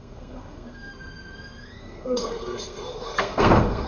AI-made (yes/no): yes